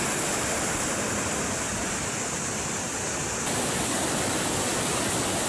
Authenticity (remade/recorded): recorded